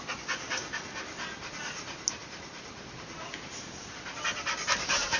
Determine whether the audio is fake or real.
real